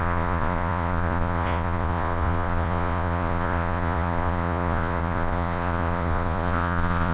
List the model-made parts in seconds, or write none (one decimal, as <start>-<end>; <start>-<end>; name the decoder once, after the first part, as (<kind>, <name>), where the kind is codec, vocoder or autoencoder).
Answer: 0.0-7.1 (vocoder, Vocos)